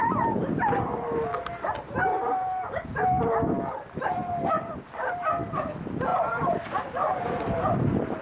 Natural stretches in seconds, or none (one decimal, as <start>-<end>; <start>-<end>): 0.0-2.1; 3.3-4.2; 5.5-8.2